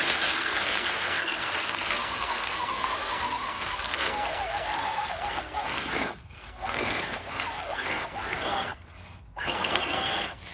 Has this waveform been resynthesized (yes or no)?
yes